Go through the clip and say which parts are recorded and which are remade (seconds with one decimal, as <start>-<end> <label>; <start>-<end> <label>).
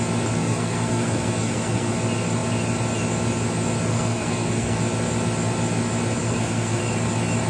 0.0-0.4 recorded; 0.4-1.9 remade; 1.9-3.9 recorded; 3.9-4.8 remade; 4.8-6.2 recorded; 6.2-6.8 remade; 6.8-7.5 recorded